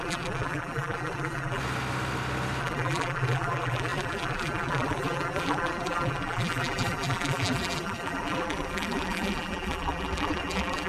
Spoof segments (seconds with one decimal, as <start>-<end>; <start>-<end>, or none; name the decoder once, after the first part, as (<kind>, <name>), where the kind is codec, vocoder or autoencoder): 0.0-1.6 (vocoder, BigVGAN v2); 2.6-10.9